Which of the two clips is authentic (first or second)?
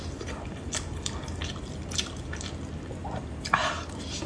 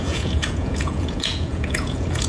first